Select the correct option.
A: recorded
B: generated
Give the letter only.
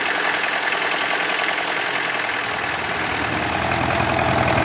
A